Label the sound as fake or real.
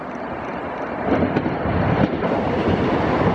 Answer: real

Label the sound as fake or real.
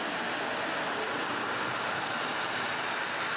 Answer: real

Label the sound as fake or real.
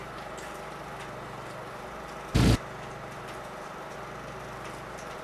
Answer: real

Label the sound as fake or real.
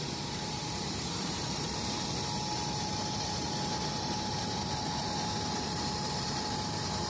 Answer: fake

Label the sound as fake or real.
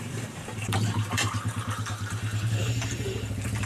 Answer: fake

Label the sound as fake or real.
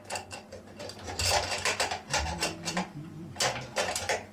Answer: real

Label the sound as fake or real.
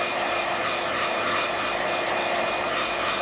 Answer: fake